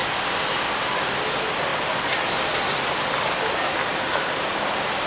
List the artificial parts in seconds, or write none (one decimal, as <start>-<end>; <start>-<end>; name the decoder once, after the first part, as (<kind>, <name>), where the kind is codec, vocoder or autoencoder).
none